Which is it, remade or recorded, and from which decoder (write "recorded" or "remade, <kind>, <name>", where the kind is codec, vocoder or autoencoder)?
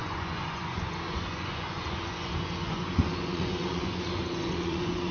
remade, vocoder, Vocos